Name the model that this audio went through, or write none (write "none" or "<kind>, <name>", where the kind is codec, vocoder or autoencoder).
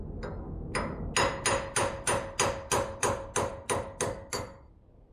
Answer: none